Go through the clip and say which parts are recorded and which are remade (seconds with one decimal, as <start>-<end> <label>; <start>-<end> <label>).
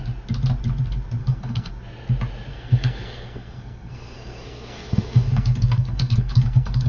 0.0-1.2 recorded; 1.2-1.7 remade; 1.7-2.5 recorded; 2.5-6.9 remade